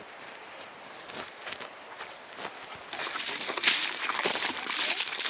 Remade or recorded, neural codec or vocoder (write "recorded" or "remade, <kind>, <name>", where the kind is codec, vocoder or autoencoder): recorded